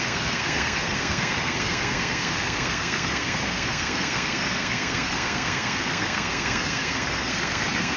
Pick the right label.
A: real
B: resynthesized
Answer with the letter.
B